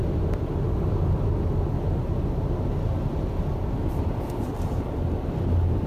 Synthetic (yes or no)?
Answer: no